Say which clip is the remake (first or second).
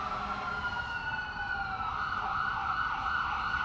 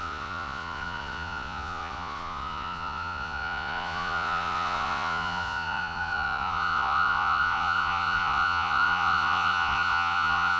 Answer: second